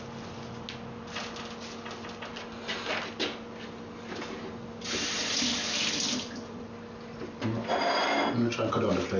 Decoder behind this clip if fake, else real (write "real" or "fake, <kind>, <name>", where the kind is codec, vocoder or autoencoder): real